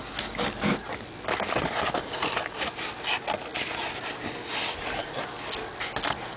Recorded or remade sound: recorded